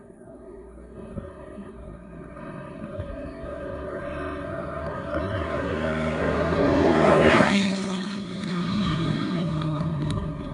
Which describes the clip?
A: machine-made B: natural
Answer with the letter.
A